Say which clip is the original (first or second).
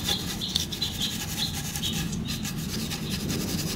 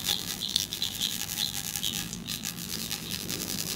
first